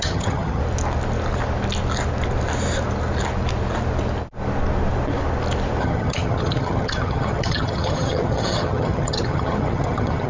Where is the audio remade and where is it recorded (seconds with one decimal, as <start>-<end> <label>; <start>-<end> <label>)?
0.0-0.6 remade; 0.6-5.8 recorded; 5.8-10.3 remade